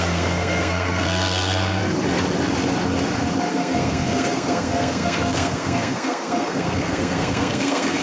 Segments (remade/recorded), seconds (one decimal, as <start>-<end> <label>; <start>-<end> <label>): 0.0-1.8 remade; 1.8-3.5 recorded; 3.5-8.0 remade